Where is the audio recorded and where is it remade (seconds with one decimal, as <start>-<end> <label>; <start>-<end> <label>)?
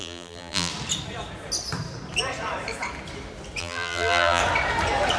0.0-0.7 remade; 0.7-3.6 recorded; 3.6-4.4 remade; 4.4-5.2 recorded